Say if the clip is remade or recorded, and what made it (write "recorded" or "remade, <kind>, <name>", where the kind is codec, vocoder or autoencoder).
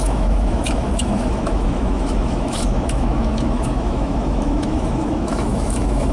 remade, autoencoder, DAC-VAE